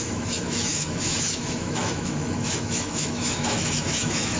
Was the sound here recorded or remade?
remade